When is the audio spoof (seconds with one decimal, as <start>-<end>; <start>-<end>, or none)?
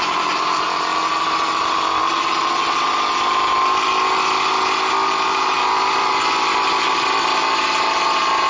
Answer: 5.6-6.5